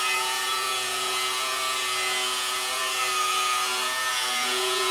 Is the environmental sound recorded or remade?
remade